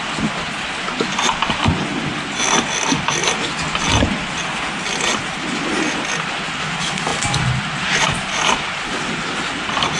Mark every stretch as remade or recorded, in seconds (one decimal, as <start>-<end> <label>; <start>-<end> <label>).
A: 0.0-10.0 recorded